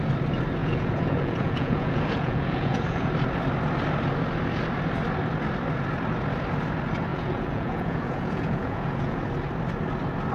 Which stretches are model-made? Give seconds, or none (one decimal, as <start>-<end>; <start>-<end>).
0.6-3.1; 7.1-9.2